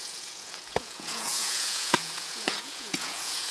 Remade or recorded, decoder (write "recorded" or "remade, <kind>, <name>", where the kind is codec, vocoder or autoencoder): remade, vocoder, Vocos